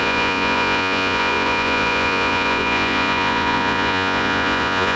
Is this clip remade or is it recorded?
remade